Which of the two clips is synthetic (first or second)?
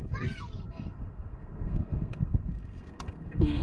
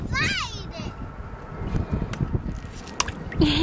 first